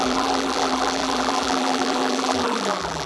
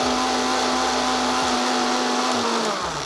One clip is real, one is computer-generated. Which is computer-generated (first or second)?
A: first